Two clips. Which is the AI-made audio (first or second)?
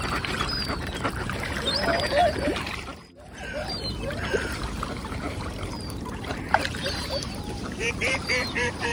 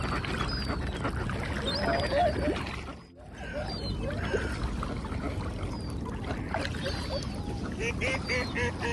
first